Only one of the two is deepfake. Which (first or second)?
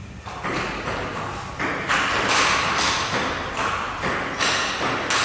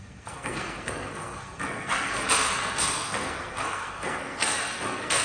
second